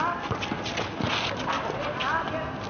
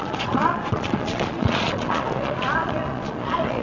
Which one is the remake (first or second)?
second